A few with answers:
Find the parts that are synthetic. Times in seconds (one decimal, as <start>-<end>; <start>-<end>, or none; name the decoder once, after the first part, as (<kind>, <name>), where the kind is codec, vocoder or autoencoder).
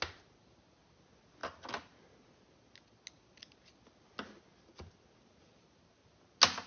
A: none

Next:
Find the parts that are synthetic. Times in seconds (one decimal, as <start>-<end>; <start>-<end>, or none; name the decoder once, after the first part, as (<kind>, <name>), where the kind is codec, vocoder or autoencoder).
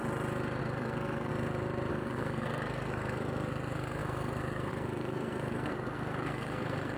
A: 0.6-1.3 (codec, SNAC); 1.9-7.0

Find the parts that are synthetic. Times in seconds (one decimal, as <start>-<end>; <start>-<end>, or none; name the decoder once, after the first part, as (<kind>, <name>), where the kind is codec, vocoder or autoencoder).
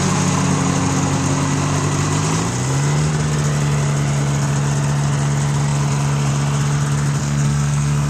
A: 7.2-8.1 (codec, SNAC)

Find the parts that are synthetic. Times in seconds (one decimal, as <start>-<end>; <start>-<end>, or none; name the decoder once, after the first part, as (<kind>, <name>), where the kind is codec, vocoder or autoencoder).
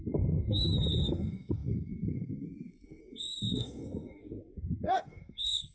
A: 0.0-5.7 (codec, SNAC)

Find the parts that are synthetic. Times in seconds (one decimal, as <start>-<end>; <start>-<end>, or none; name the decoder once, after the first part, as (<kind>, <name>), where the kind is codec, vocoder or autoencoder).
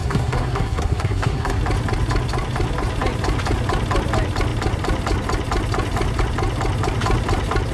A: 0.0-1.6 (codec, SNAC)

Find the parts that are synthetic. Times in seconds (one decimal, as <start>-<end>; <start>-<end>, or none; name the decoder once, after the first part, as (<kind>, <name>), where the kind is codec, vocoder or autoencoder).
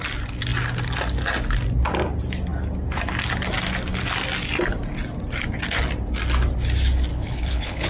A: 7.1-7.9 (codec, HILCodec)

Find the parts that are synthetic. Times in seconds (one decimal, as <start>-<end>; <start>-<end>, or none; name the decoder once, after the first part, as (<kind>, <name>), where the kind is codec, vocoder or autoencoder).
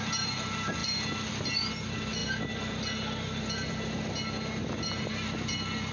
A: none